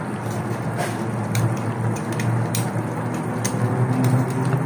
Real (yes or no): yes